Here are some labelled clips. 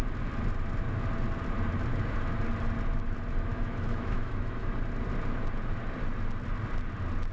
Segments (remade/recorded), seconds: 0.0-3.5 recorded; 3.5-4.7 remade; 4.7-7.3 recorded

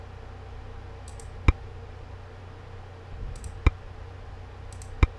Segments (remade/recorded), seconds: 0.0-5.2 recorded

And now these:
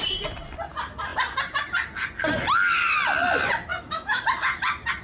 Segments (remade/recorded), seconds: 0.0-3.7 recorded; 3.7-4.2 remade; 4.2-5.0 recorded